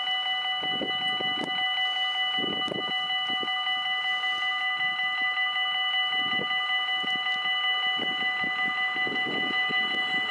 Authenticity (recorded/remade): recorded